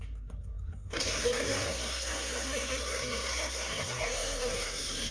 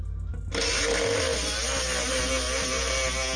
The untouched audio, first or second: second